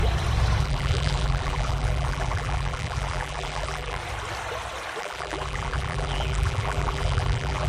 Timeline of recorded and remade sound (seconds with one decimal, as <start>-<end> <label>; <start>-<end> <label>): 0.0-0.6 recorded; 0.6-4.0 remade; 4.0-5.0 recorded; 5.0-7.7 remade